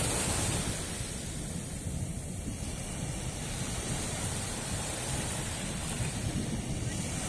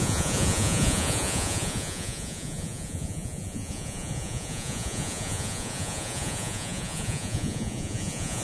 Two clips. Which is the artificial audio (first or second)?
second